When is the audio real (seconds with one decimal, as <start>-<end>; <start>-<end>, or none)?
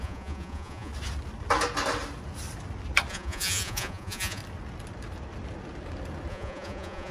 0.9-3.1; 4.4-6.3